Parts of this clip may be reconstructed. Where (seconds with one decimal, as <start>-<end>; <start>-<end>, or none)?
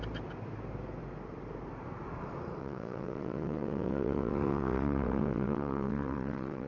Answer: 2.6-6.7